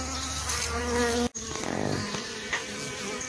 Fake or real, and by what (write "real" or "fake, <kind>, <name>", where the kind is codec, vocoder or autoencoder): real